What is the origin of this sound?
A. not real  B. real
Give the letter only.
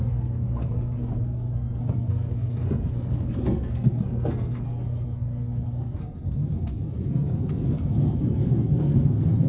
A